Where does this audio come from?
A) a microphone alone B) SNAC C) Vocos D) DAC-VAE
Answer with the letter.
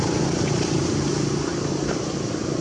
A